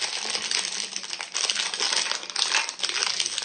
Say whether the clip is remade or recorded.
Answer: recorded